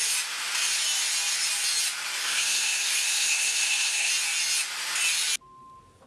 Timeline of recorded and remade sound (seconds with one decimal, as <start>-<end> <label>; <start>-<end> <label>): 0.0-2.2 recorded; 2.2-4.1 remade; 4.1-6.1 recorded